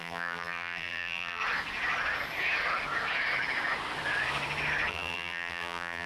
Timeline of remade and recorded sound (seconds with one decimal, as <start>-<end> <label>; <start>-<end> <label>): 0.0-1.4 remade; 1.4-4.9 recorded; 4.9-6.1 remade